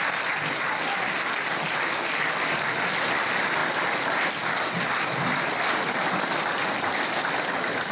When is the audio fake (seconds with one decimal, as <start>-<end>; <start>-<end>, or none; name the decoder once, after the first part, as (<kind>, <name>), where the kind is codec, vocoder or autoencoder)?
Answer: none